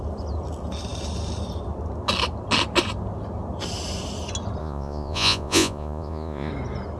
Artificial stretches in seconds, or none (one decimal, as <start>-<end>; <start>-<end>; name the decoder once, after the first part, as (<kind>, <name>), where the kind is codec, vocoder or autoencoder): 4.6-6.5 (vocoder, Vocos)